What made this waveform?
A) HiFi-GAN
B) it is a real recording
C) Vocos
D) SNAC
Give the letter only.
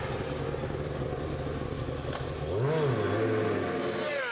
B